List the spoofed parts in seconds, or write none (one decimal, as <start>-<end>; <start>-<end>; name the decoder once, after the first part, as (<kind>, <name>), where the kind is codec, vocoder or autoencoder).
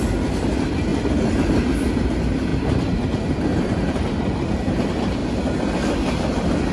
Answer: 0.0-2.5 (vocoder, BigVGAN v2); 3.5-5.2